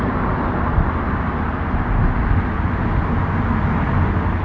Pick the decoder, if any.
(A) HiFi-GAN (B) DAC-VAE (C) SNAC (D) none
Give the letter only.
D